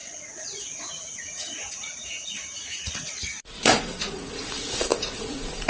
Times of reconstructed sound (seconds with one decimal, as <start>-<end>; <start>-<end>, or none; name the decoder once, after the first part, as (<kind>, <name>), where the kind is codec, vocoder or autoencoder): 0.0-5.7 (vocoder, Vocos)